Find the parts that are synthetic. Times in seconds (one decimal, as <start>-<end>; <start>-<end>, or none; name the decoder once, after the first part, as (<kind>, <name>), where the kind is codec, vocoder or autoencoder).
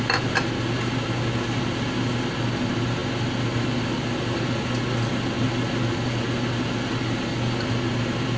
none